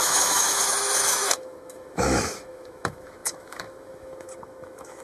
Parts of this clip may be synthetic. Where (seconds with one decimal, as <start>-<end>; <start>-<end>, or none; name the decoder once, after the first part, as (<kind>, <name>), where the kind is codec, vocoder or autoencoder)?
0.0-5.0 (autoencoder, DAC-VAE)